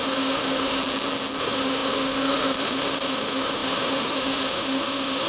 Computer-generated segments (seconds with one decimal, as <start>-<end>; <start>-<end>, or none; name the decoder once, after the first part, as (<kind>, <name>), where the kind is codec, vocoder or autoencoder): 0.0-0.8 (autoencoder, DAC-VAE); 1.4-5.3